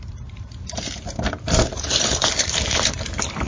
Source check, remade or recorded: remade